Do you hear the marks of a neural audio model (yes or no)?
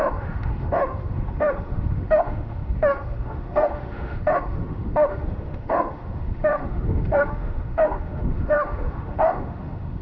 yes